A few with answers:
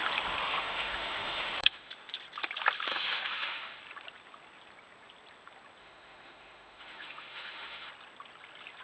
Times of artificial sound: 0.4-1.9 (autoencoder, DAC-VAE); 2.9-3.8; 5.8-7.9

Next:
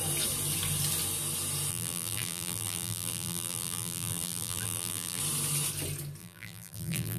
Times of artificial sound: 1.7-5.2 (vocoder, BigVGAN v2); 6.2-7.2

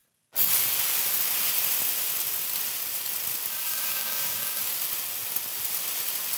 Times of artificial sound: 3.5-4.6 (codec, DAC)

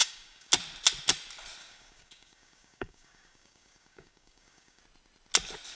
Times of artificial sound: 0.0-0.5 (codec, DAC); 1.6-4.8

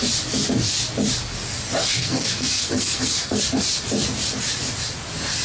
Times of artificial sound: 2.0-3.4 (codec, SNAC)

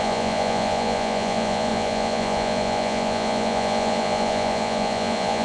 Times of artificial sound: 0.0-5.4 (vocoder, Vocos)

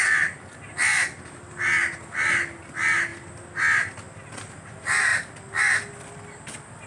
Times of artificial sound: none

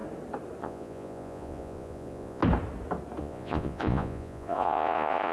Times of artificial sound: 0.6-2.4 (vocoder, Vocos); 3.2-5.3